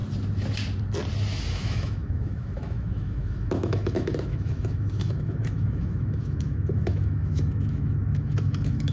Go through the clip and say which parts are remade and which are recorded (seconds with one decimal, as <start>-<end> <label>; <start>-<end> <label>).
0.0-1.5 recorded; 1.5-8.9 remade